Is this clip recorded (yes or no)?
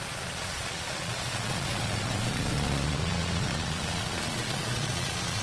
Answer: no